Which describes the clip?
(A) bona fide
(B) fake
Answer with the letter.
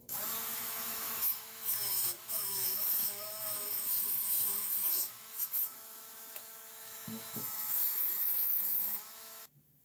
B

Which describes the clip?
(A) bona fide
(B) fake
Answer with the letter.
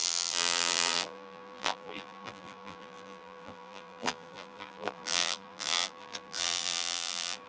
B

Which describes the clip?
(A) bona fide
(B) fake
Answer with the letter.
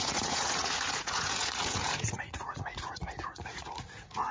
B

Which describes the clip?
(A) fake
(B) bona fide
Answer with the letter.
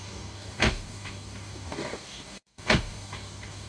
A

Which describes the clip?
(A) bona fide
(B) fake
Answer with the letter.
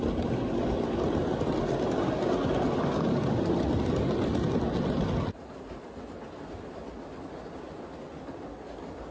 A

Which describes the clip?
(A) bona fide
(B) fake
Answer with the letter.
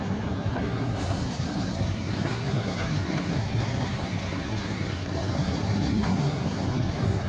B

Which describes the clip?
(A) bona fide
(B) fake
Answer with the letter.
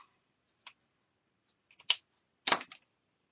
A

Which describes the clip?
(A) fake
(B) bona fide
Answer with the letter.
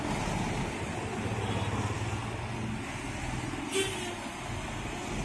B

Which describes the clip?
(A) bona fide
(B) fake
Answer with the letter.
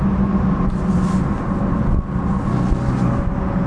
A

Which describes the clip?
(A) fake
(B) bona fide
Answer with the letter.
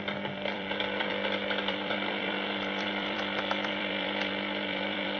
A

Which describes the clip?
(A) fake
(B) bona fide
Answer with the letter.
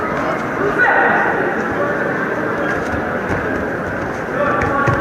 B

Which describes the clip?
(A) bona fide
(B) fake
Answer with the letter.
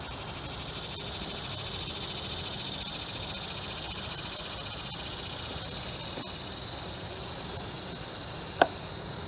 A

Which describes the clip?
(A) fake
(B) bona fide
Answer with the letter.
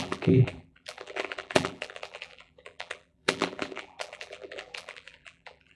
A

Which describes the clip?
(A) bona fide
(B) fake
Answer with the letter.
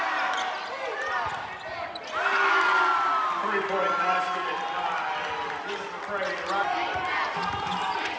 A